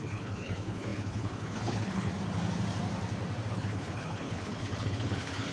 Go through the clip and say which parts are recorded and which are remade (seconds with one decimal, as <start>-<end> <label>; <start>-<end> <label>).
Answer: 0.0-2.1 remade; 2.1-3.5 recorded; 3.5-5.5 remade